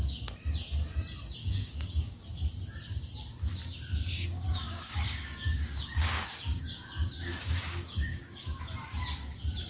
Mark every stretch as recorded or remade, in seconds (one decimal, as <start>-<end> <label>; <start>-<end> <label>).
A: 0.0-1.4 recorded; 1.4-2.2 remade; 2.2-4.0 recorded; 4.0-8.6 remade; 8.6-9.7 recorded